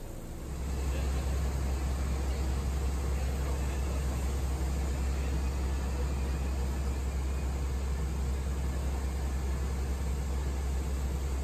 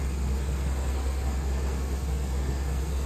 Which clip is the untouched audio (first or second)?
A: first